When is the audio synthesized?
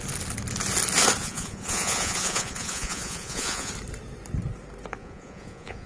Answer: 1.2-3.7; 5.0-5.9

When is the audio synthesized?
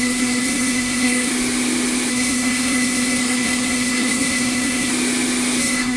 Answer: 0.0-1.3; 2.1-4.9; 5.6-6.0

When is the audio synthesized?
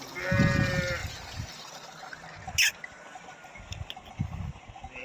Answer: none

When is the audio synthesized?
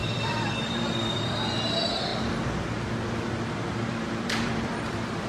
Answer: 0.0-2.1; 3.7-5.3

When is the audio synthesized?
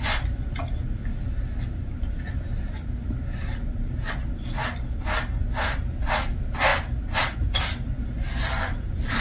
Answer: none